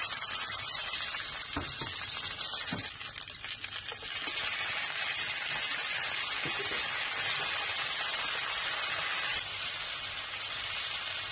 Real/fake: real